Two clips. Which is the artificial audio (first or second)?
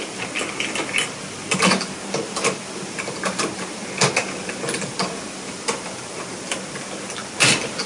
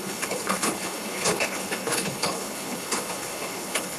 second